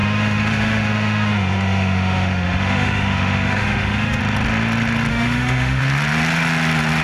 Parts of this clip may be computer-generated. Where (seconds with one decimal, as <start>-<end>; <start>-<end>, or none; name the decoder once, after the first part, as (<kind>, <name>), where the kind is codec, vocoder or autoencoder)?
0.0-4.2 (autoencoder, DAC-VAE); 5.1-5.8